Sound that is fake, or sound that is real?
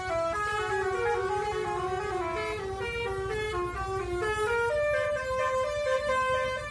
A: real